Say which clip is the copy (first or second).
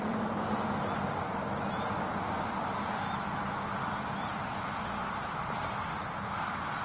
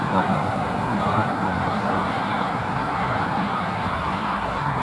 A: second